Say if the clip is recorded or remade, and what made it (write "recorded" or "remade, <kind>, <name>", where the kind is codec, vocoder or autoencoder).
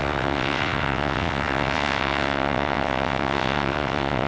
remade, vocoder, WaveNeXt